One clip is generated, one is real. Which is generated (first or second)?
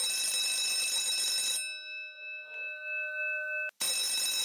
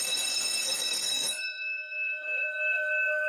second